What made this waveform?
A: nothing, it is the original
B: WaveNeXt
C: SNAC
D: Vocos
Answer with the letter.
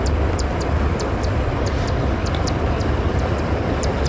A